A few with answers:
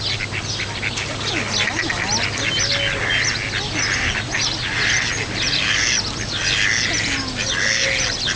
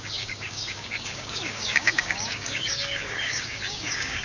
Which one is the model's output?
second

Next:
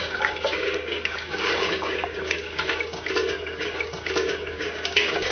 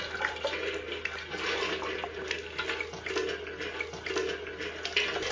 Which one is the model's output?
first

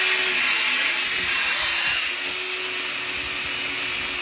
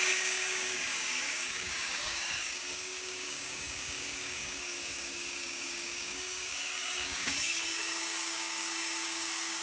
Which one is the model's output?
second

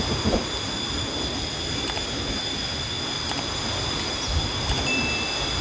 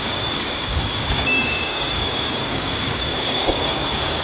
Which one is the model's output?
second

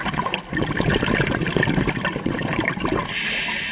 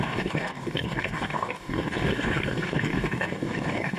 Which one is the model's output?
second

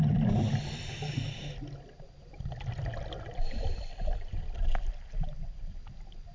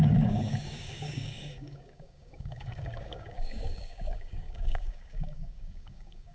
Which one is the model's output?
second